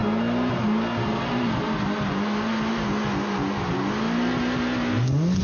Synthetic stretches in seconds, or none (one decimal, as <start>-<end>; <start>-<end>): none